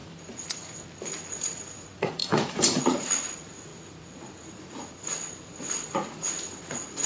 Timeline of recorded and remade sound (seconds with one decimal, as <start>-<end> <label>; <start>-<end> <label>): 0.0-1.3 recorded; 1.3-7.1 remade